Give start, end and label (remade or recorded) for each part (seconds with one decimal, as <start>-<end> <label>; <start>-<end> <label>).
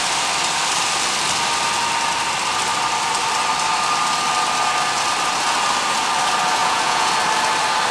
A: 0.0-6.6 recorded; 6.6-7.1 remade; 7.1-7.9 recorded